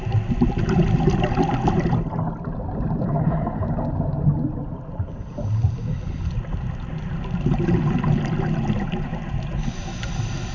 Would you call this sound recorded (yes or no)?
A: yes